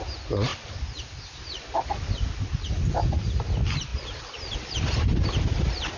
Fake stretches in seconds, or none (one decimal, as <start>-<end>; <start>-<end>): none